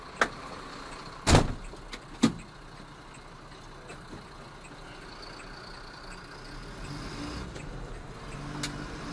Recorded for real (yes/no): yes